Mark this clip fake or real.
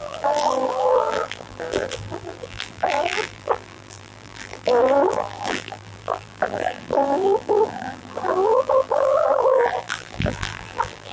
fake